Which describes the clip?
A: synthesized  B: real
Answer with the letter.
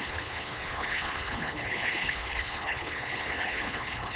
A